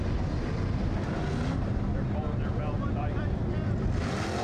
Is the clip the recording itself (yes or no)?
yes